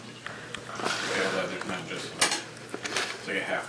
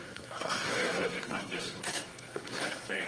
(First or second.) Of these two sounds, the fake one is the second